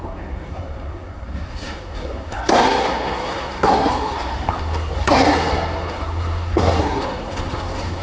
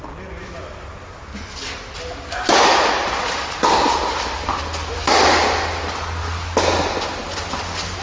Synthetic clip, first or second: first